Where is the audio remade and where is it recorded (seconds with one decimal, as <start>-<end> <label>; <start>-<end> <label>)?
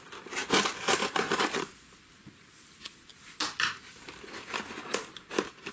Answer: 0.0-0.4 remade; 0.4-2.0 recorded; 2.0-3.1 remade; 3.1-4.2 recorded; 4.2-5.7 remade